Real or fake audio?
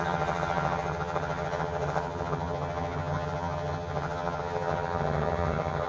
fake